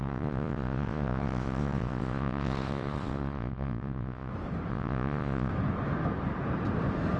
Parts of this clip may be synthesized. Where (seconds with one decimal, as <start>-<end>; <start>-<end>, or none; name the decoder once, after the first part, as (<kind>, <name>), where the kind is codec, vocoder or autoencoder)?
0.0-4.3 (vocoder, Vocos); 4.7-5.5